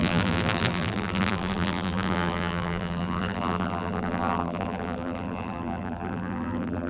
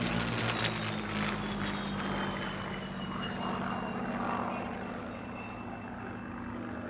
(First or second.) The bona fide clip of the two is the second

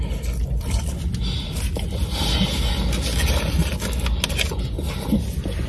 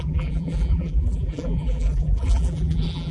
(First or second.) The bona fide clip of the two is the first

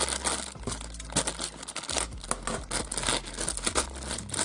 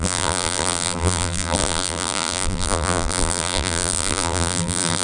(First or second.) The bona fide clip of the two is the first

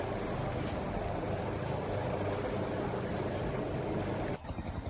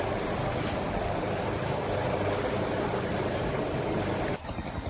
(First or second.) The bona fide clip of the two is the first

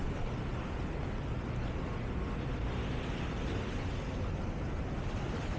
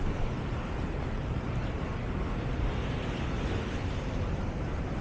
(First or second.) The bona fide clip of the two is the first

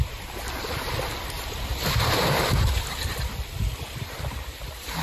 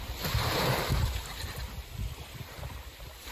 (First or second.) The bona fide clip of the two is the second